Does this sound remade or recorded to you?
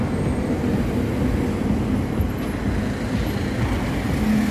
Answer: recorded